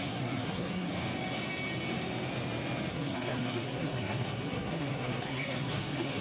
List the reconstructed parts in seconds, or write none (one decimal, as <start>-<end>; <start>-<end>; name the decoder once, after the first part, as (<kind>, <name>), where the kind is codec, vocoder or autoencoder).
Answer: 0.0-0.9 (codec, SNAC); 2.9-6.2